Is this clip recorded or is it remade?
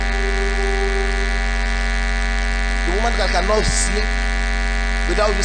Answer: recorded